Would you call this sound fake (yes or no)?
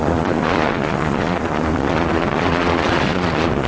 yes